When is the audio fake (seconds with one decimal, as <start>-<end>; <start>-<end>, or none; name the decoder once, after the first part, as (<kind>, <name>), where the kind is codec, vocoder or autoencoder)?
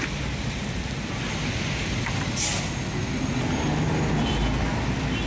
none